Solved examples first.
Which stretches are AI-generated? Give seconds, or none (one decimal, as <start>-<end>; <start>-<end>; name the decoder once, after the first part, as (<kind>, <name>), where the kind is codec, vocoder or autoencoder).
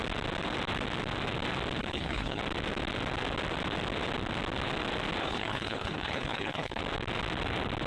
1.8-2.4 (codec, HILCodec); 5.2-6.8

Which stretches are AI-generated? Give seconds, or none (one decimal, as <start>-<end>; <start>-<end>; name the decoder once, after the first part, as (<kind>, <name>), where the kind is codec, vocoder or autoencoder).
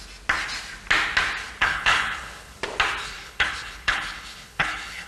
1.6-2.6 (codec, HILCodec); 3.0-5.1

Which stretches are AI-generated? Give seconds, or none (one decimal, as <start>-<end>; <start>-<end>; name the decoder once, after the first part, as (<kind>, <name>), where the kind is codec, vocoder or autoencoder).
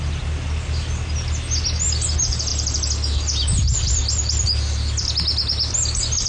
none